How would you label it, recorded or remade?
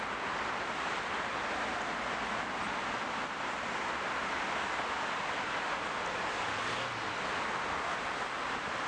recorded